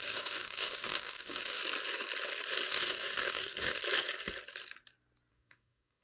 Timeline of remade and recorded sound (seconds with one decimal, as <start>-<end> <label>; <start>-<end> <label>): 0.0-1.6 remade; 1.6-2.7 recorded; 2.7-3.8 remade; 3.8-5.3 recorded; 5.3-6.0 remade